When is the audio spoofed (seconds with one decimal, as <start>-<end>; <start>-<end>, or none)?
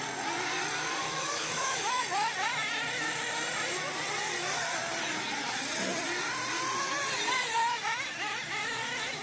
1.0-2.0